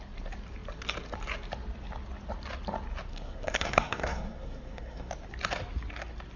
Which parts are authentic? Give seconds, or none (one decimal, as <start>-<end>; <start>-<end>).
0.0-3.1; 5.1-6.4